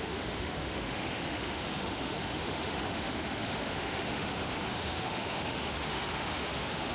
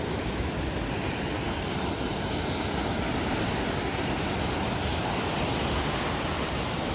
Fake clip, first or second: first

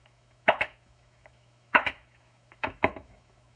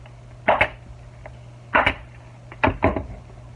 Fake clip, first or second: first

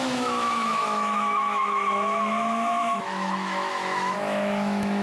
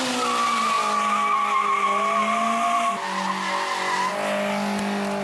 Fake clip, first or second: first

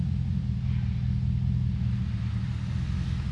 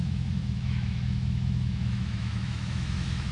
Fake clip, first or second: second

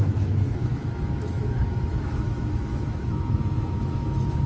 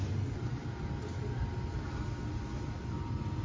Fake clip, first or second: first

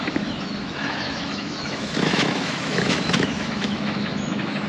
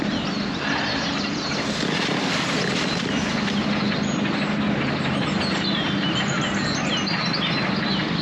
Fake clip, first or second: first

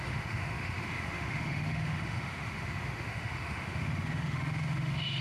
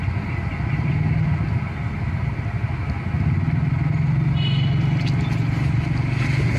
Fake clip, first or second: first